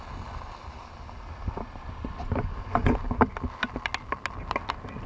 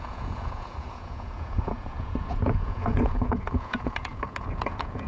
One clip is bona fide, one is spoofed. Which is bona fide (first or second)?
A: first